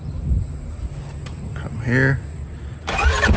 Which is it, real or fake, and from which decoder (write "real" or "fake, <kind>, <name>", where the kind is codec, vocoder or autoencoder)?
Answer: real